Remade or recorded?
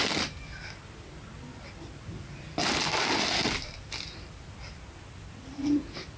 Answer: recorded